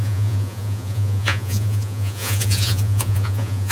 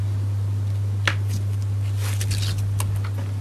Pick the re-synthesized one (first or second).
first